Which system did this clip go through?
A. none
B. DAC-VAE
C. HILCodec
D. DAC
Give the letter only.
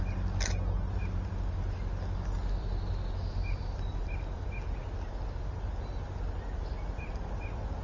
A